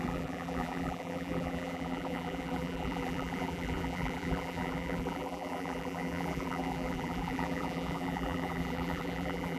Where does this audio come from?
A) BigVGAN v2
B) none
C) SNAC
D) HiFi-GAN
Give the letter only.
A